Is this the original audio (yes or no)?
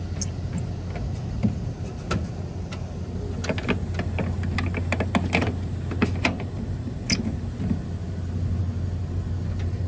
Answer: yes